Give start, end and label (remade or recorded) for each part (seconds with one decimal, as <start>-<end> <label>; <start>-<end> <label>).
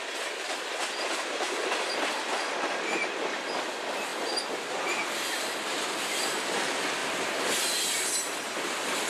0.0-7.0 recorded; 7.0-7.6 remade; 7.6-9.1 recorded